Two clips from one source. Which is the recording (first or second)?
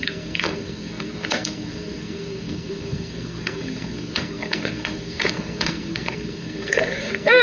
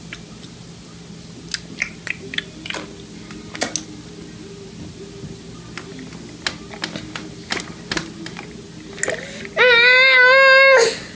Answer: second